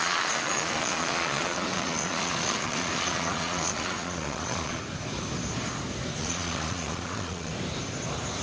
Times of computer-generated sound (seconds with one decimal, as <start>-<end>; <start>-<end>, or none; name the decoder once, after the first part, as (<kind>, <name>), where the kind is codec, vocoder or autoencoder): 0.0-4.8 (vocoder, Vocos); 6.2-7.5